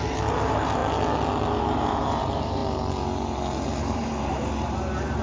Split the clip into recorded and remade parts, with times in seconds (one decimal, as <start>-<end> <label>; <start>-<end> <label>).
0.0-0.8 remade; 0.8-1.6 recorded; 1.6-2.6 remade; 2.6-3.8 recorded; 3.8-5.2 remade